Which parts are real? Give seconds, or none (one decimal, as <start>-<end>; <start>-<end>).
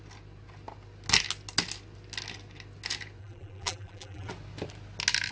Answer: 0.0-3.2; 4.3-5.3